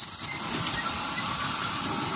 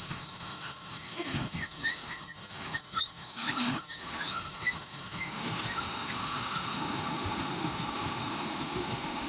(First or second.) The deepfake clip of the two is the second